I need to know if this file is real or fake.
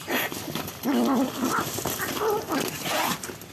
real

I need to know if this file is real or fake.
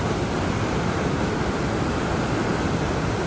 real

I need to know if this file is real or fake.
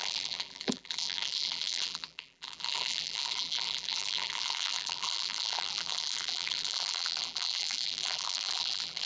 fake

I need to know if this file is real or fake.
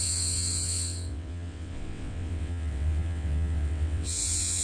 fake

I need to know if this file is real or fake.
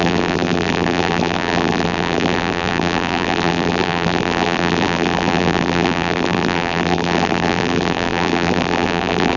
fake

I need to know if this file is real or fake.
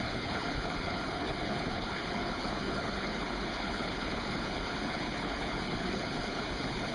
fake